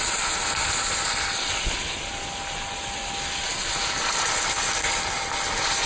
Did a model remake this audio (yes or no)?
no